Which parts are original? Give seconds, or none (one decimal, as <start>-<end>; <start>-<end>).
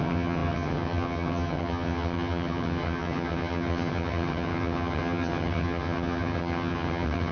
none